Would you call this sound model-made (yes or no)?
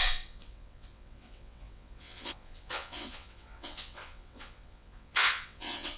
yes